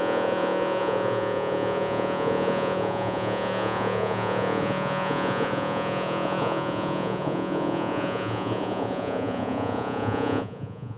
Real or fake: fake